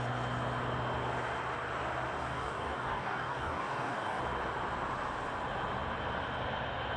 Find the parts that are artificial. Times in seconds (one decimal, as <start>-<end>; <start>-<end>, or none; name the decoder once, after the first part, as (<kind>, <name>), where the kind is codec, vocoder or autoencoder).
2.2-4.2 (codec, DAC)

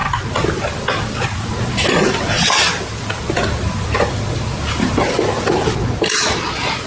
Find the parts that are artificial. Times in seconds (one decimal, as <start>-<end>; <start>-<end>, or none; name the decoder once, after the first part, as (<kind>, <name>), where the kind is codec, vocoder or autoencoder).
none

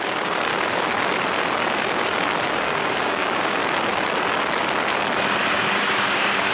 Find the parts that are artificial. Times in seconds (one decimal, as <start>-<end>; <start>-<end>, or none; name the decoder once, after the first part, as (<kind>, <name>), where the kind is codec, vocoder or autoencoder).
0.0-0.5 (codec, DAC); 2.5-3.6; 5.5-6.5